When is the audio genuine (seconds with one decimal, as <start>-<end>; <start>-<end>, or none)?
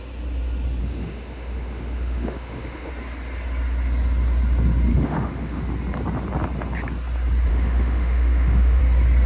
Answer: 0.0-0.8; 2.9-4.9; 5.6-7.5; 8.8-9.3